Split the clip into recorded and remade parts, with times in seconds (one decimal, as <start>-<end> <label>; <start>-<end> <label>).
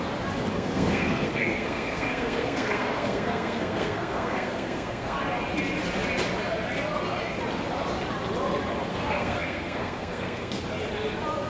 0.0-0.5 recorded; 0.5-5.2 remade; 5.2-8.9 recorded; 8.9-10.6 remade; 10.6-11.5 recorded